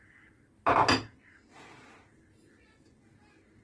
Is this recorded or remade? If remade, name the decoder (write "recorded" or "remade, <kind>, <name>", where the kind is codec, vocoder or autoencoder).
recorded